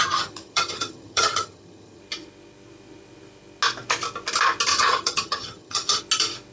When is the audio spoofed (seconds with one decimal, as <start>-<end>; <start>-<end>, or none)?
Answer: 0.0-2.0; 4.7-6.0

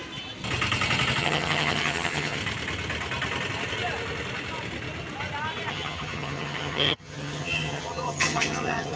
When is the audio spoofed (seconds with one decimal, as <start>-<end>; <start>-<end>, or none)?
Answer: 1.2-2.4; 5.7-9.0

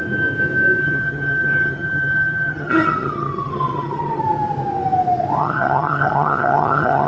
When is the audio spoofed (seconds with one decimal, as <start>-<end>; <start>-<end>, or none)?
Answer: 0.8-4.2; 5.4-7.1

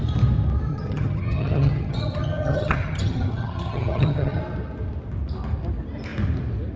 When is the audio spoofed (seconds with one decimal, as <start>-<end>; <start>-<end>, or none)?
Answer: 0.7-4.4

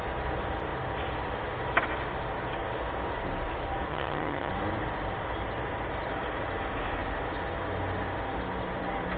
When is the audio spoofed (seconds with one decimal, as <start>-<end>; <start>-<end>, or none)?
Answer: 3.9-4.5

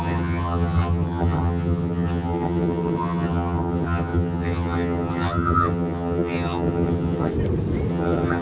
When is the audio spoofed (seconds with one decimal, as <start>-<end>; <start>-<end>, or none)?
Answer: 0.0-7.3; 7.9-8.4

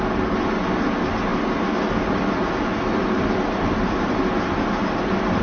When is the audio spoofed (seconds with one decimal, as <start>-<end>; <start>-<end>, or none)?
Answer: none